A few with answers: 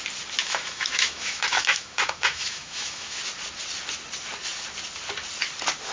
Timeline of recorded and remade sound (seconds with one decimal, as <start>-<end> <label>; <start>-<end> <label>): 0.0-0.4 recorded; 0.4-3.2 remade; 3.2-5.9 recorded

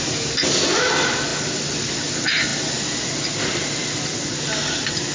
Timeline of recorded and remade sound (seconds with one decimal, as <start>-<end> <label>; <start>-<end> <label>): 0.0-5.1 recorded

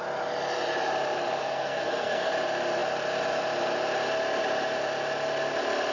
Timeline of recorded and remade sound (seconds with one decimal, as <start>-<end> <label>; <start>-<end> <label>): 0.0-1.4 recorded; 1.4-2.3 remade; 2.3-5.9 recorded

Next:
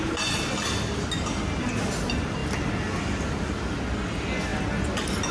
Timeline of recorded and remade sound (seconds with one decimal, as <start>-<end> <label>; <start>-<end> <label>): 0.0-5.3 recorded

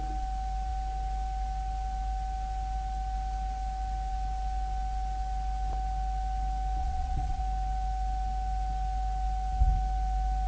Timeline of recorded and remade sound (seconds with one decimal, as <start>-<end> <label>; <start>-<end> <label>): 0.0-6.8 recorded; 6.8-7.4 remade; 7.4-10.5 recorded

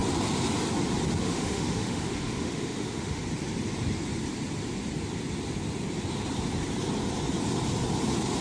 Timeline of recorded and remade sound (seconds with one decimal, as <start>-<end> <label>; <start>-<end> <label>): 0.0-1.2 recorded; 1.2-3.2 remade; 3.2-8.4 recorded

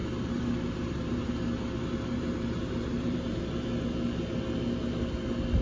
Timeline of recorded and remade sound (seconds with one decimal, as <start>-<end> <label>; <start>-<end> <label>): 0.0-3.4 remade; 3.4-5.6 recorded

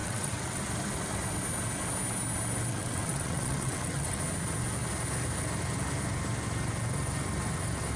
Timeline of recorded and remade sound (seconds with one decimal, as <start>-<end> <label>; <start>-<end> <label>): 0.0-0.6 remade; 0.6-2.7 recorded; 2.7-4.2 remade; 4.2-8.0 recorded